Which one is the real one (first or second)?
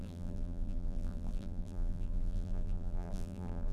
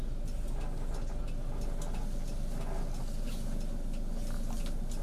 second